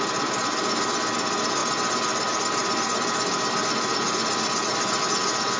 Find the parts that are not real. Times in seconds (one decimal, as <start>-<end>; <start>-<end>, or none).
0.0-5.6